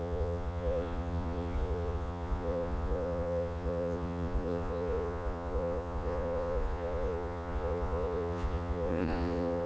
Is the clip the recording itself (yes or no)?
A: no